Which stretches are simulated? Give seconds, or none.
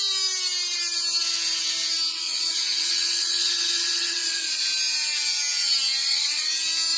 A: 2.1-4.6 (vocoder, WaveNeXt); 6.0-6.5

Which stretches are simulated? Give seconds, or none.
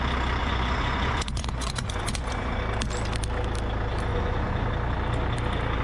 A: 0.4-2.6 (vocoder, Vocos); 4.1-4.7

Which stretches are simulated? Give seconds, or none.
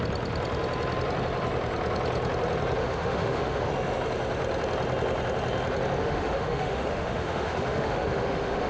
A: 2.8-3.7 (autoencoder, DAC-VAE); 6.0-8.7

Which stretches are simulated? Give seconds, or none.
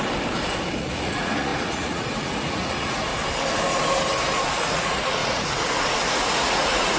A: 0.8-3.1 (vocoder, Vocos); 4.5-7.0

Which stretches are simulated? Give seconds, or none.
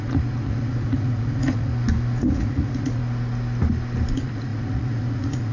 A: 0.0-1.7 (vocoder, Vocos); 2.2-3.0; 4.1-5.5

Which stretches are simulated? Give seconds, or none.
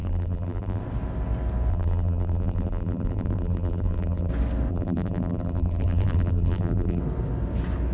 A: 0.0-0.8 (vocoder, BigVGAN v2); 1.7-4.3; 4.7-7.0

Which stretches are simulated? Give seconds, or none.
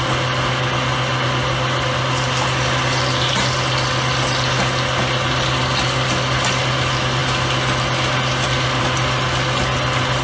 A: none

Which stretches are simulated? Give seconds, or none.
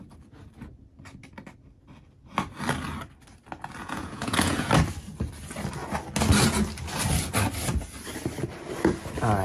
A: 3.8-4.7 (vocoder, Vocos)